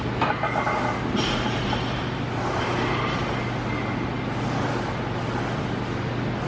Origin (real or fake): real